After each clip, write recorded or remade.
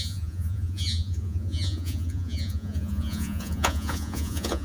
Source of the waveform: remade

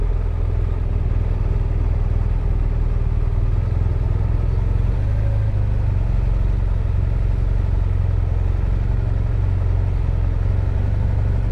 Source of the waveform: recorded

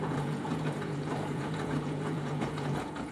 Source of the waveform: remade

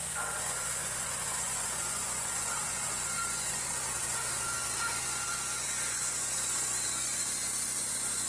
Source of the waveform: remade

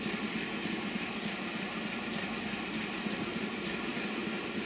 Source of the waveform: recorded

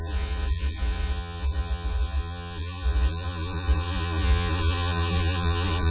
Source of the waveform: remade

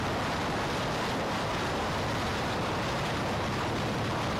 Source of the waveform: recorded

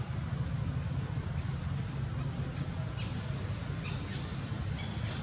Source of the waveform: recorded